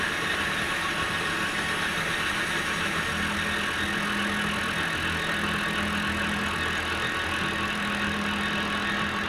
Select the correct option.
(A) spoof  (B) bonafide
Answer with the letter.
B